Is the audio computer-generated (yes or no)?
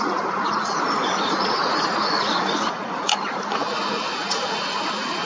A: yes